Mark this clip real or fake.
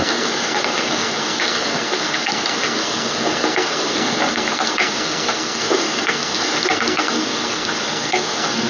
fake